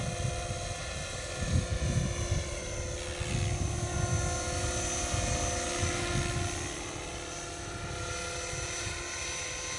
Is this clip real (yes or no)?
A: yes